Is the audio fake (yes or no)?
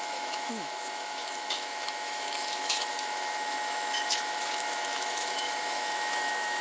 yes